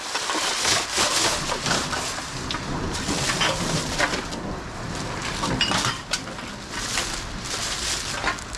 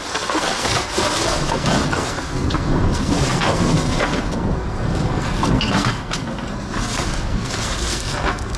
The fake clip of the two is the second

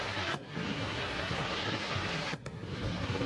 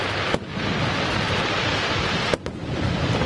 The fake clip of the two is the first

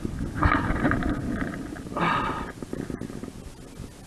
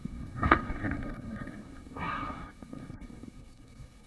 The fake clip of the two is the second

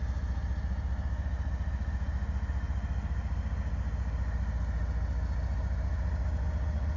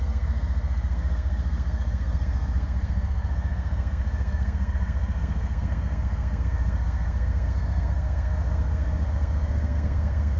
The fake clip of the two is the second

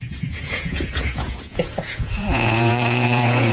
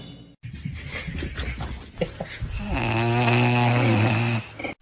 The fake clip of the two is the first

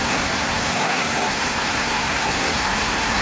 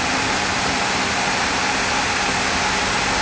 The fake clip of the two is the first